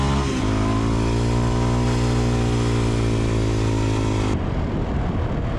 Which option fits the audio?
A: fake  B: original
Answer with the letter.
B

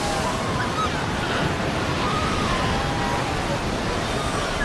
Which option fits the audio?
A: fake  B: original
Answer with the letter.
B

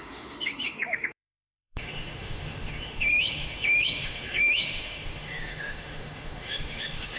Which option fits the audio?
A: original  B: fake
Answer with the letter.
B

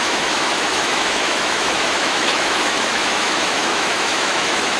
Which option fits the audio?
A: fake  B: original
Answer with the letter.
A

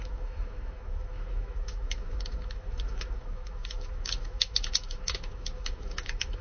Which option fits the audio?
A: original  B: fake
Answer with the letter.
B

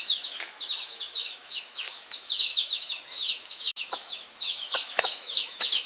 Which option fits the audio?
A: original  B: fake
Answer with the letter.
B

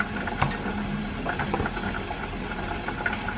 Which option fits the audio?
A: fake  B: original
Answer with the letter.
B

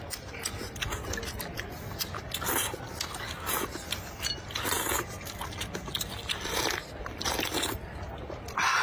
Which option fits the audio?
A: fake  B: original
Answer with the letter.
B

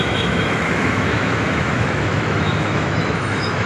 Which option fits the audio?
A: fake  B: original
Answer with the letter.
A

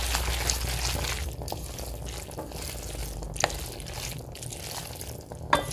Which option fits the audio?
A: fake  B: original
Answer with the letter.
B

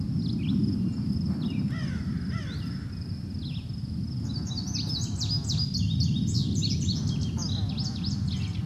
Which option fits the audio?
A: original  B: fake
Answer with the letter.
A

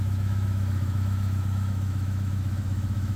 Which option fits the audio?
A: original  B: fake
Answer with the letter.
B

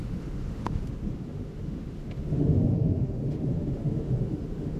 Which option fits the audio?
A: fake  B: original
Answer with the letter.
A